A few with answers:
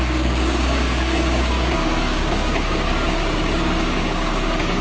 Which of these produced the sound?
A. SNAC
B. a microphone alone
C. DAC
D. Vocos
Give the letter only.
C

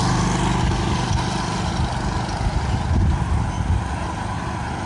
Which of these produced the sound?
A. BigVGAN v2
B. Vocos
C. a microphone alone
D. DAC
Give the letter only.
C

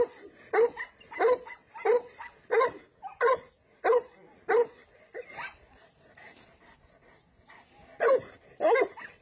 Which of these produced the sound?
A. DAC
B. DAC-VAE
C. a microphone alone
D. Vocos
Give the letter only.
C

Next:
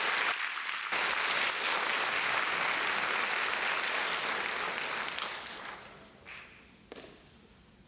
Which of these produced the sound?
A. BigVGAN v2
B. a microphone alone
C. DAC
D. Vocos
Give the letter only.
B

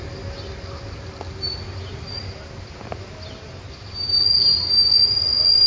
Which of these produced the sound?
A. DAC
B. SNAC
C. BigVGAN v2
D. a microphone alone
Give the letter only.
D